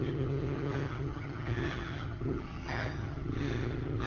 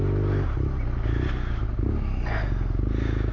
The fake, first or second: first